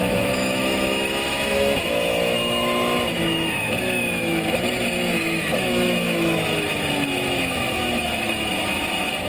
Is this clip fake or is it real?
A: fake